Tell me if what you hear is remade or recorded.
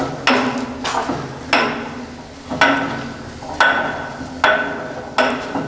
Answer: recorded